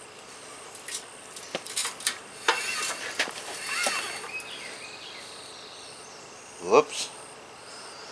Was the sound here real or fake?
real